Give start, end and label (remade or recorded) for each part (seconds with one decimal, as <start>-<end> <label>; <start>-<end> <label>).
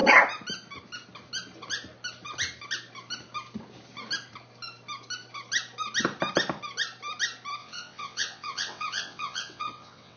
0.0-7.6 recorded; 7.6-10.2 remade